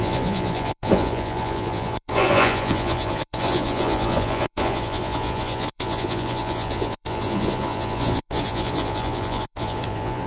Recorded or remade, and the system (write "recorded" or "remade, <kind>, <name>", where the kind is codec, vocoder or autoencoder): remade, vocoder, Vocos